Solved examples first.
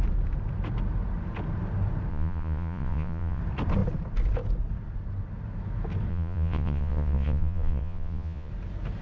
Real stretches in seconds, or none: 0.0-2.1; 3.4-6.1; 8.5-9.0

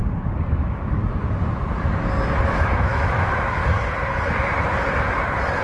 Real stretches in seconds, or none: 0.0-0.5; 1.0-2.5; 3.6-5.6

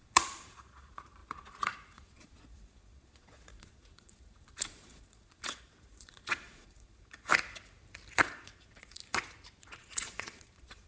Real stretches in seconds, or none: 7.3-8.2; 9.0-9.6